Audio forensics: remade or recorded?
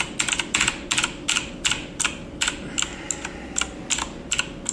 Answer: recorded